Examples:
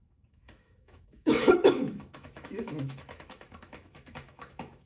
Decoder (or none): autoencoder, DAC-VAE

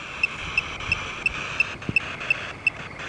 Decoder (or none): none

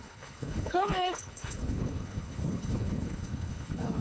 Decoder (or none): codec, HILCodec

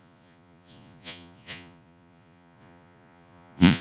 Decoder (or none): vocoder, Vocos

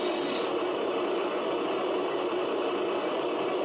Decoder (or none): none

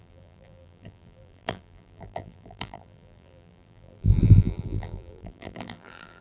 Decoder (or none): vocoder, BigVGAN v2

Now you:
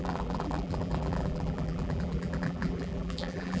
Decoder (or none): vocoder, BigVGAN v2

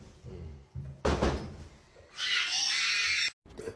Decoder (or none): none